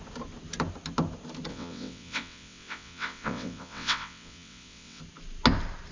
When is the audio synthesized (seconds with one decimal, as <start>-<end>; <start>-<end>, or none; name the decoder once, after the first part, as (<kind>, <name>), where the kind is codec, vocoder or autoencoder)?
1.5-5.0 (vocoder, WaveNeXt)

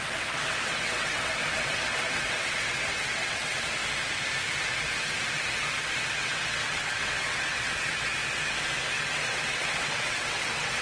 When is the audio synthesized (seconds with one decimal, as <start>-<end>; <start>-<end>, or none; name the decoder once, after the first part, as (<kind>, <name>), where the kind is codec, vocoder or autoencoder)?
0.0-3.8 (vocoder, WaveNeXt); 6.1-7.9; 9.1-10.8